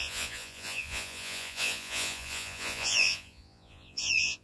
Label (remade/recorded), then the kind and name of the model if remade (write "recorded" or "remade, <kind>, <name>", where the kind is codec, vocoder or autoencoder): remade, vocoder, Vocos